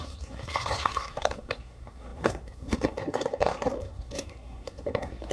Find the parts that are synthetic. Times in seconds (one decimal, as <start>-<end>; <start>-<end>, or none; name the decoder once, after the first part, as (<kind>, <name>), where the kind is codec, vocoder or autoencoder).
0.0-5.3 (codec, SNAC)